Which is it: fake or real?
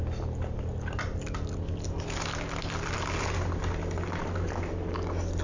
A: real